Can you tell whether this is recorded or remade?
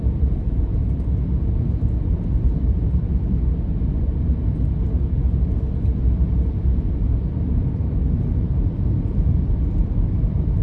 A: remade